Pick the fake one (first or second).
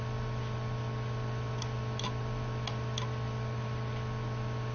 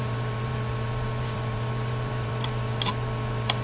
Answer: second